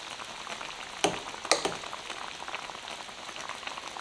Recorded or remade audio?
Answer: recorded